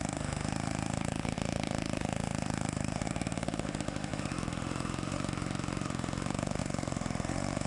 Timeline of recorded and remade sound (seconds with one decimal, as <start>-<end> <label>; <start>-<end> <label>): 0.0-7.7 remade